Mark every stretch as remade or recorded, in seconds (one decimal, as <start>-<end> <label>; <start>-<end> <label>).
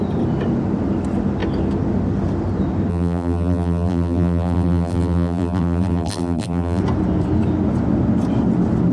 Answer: 0.0-2.9 recorded; 2.9-6.8 remade; 6.8-8.9 recorded